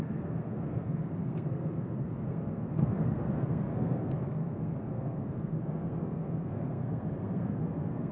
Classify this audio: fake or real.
fake